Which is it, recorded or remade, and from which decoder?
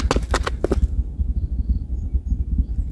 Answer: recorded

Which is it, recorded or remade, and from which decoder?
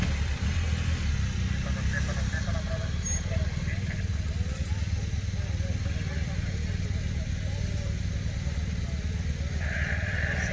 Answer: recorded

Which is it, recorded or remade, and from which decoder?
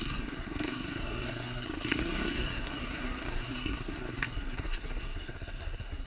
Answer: remade, codec, SNAC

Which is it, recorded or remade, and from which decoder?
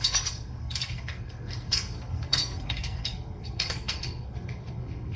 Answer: remade, codec, SNAC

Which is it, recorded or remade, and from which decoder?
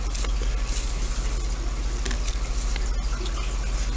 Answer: recorded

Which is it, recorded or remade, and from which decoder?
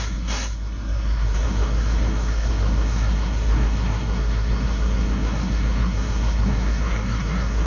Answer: remade, codec, SNAC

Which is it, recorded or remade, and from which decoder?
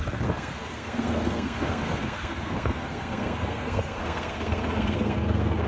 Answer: remade, codec, SNAC